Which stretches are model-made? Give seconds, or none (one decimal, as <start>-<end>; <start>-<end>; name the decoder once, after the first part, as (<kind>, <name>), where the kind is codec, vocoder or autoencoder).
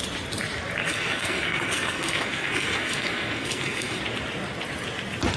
0.8-4.0 (codec, SNAC)